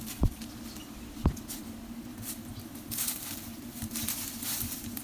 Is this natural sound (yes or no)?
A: yes